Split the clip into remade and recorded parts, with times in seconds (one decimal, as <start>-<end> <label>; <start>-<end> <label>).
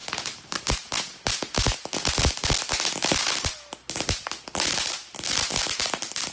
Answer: 0.0-6.3 recorded